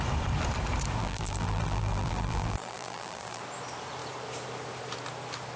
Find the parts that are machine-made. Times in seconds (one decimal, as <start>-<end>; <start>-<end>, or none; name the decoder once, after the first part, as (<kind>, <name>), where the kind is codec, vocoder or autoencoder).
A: 1.0-3.4 (vocoder, BigVGAN v2)